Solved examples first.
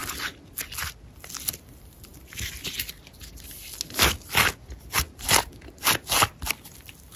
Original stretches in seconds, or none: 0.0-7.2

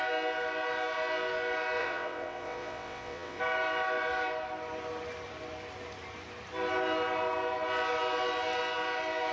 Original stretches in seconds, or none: 0.0-1.8; 3.4-9.3

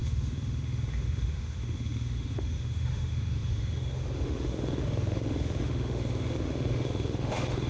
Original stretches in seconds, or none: none

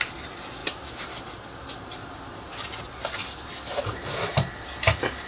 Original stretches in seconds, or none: 0.0-5.3

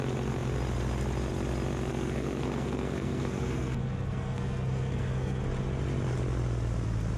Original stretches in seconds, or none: 0.0-1.9; 5.4-7.2

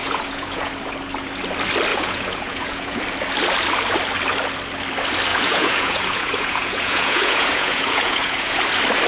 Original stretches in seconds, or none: 0.7-1.9; 3.0-5.3; 8.6-9.1